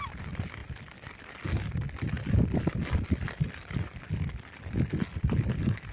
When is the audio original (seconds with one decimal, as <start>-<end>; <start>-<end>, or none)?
0.0-5.9